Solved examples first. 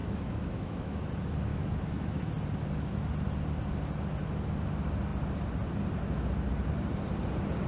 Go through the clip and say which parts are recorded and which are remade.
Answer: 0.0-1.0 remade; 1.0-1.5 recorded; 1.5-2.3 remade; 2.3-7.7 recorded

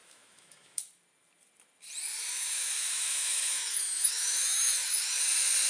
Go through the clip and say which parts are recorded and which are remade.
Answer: 0.0-0.8 remade; 0.8-2.3 recorded; 2.3-5.2 remade; 5.2-5.7 recorded

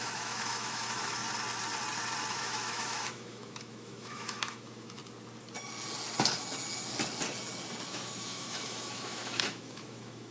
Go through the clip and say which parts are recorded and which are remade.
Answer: 0.0-1.2 remade; 1.2-2.3 recorded; 2.3-5.0 remade; 5.0-7.9 recorded; 7.9-10.3 remade

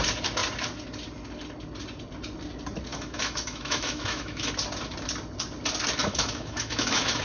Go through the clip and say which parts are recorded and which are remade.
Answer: 0.0-2.9 recorded; 2.9-4.5 remade; 4.5-6.0 recorded; 6.0-7.2 remade